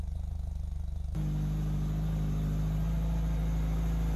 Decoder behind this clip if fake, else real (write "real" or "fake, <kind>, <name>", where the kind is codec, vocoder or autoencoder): real